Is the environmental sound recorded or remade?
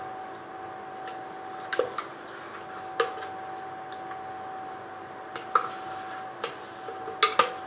recorded